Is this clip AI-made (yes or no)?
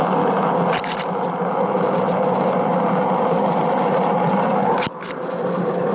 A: no